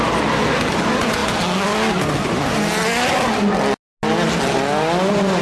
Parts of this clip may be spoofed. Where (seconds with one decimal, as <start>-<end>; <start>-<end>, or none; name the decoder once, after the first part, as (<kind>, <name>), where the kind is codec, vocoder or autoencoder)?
none